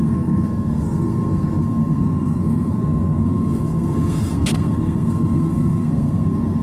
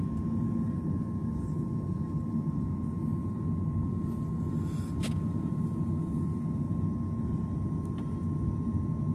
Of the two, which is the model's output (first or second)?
first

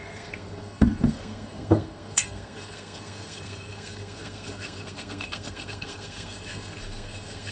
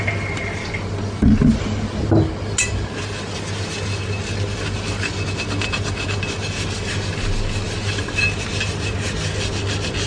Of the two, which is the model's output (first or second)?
first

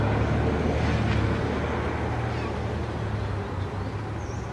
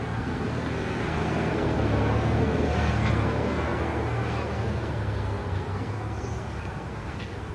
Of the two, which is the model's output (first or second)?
second